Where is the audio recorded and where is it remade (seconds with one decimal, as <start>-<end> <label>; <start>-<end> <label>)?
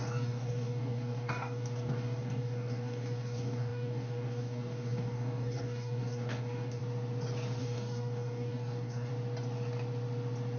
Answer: 0.0-6.8 remade; 6.8-7.6 recorded; 7.6-9.1 remade; 9.1-10.6 recorded